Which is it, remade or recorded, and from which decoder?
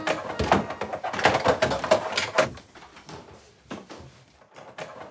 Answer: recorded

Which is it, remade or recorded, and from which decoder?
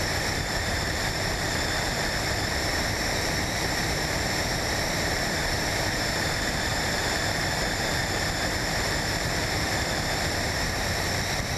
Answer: remade, vocoder, BigVGAN v2